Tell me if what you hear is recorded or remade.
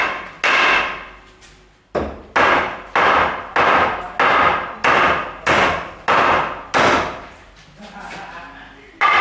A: recorded